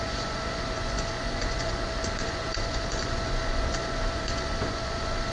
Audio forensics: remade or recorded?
remade